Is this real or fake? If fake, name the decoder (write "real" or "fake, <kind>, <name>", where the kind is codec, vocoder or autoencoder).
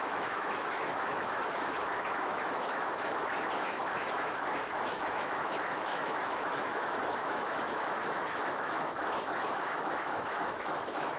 fake, autoencoder, DAC-VAE